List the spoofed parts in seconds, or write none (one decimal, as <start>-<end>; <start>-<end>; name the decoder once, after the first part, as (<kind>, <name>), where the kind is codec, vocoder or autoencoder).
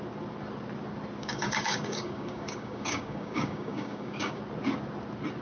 1.2-4.4 (codec, DAC)